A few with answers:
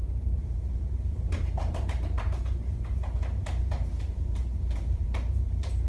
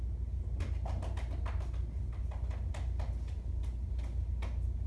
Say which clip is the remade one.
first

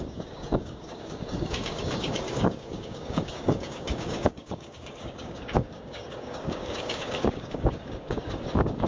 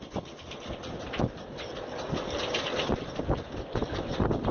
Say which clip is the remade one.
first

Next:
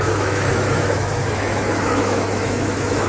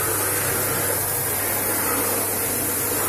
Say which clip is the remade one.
first